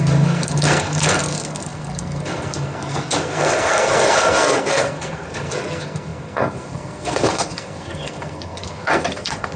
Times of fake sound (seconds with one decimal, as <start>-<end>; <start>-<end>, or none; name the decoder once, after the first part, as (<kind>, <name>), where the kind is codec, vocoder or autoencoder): 0.0-9.6 (codec, SNAC)